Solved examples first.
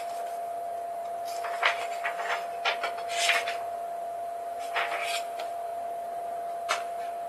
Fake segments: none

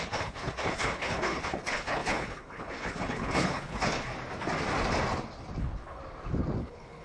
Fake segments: 0.0-4.1 (codec, HILCodec); 5.6-6.0; 6.6-7.0

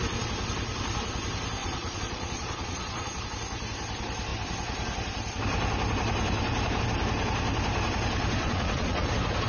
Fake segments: 1.6-3.2 (vocoder, Vocos); 8.4-9.1

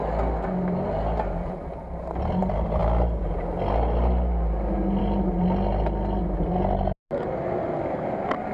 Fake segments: none

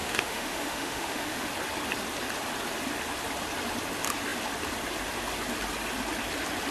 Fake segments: 0.0-1.5 (autoencoder, DAC-VAE)

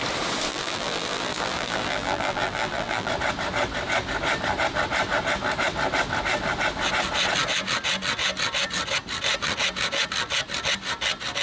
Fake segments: 0.5-3.1 (vocoder, BigVGAN v2)